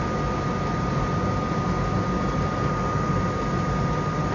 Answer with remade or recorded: recorded